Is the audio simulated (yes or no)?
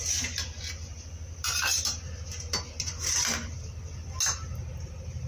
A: no